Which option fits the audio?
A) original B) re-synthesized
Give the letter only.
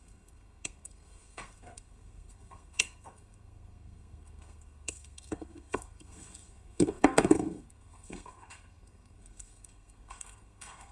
B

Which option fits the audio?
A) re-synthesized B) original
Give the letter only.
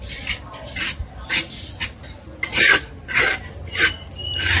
B